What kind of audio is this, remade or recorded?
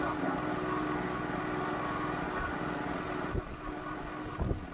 recorded